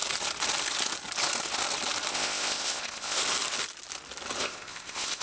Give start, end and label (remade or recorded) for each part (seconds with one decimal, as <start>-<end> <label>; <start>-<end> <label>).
0.0-2.1 recorded; 2.1-3.2 remade; 3.2-4.4 recorded; 4.4-5.2 remade